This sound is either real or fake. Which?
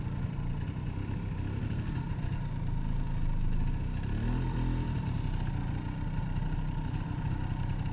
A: real